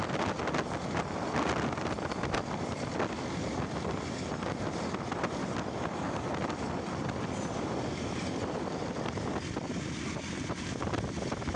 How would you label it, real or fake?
real